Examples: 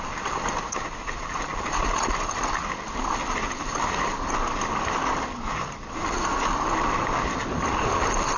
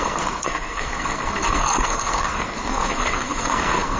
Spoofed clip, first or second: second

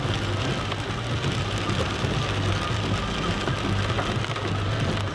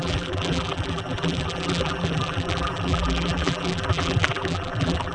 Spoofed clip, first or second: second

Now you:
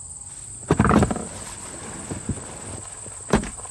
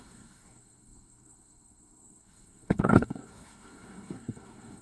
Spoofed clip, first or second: second